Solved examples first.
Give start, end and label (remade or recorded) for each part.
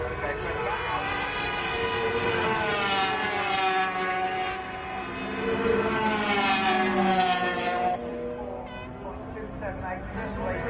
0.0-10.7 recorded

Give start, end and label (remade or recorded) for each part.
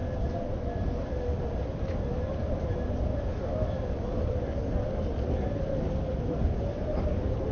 0.0-7.5 recorded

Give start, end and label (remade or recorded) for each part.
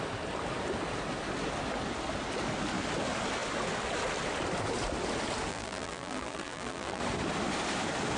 0.0-5.5 recorded; 5.5-7.0 remade; 7.0-8.2 recorded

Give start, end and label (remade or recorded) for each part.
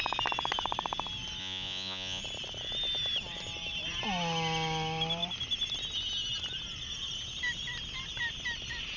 0.0-1.4 recorded; 1.4-2.2 remade; 2.2-9.0 recorded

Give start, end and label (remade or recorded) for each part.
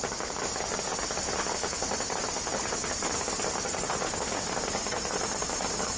0.0-6.0 recorded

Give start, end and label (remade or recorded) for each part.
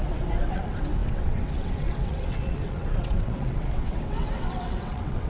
0.0-5.3 remade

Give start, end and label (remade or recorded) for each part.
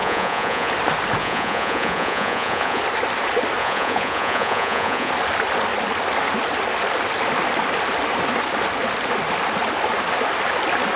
0.0-0.7 remade; 0.7-1.2 recorded; 1.2-2.8 remade; 2.8-3.6 recorded; 3.6-5.1 remade; 5.1-11.0 recorded